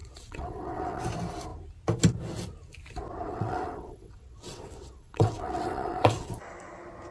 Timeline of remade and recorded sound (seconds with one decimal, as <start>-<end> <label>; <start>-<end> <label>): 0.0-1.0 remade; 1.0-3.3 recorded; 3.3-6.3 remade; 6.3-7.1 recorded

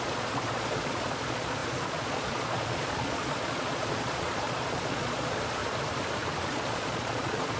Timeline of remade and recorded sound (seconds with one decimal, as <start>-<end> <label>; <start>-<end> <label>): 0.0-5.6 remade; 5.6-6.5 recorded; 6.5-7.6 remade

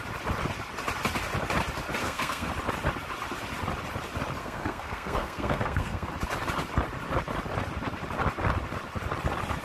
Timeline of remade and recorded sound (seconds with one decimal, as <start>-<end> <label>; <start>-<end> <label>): 0.0-2.0 recorded; 2.0-2.5 remade; 2.5-4.4 recorded; 4.4-6.1 remade; 6.1-9.6 recorded

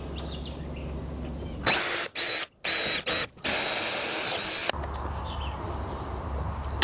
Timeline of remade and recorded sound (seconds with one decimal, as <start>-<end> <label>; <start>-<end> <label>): 0.0-6.8 recorded

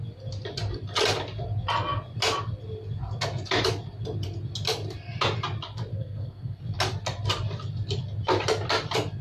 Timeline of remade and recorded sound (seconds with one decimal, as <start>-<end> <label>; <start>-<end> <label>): 0.0-5.9 recorded; 5.9-6.6 remade; 6.6-9.2 recorded

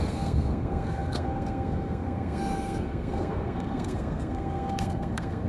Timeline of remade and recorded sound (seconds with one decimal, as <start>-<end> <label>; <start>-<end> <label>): 0.0-5.5 remade